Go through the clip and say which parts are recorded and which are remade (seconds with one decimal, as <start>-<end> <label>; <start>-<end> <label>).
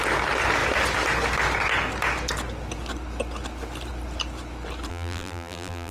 0.0-4.9 recorded; 4.9-5.9 remade